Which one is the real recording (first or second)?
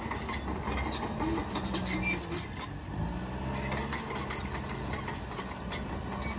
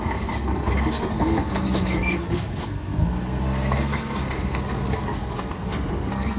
first